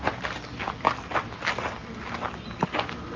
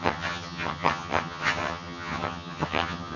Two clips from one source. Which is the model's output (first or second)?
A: second